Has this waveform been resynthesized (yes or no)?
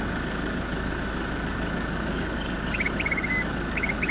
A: yes